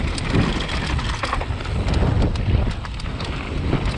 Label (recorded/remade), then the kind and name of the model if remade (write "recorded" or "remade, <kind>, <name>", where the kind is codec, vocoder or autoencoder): recorded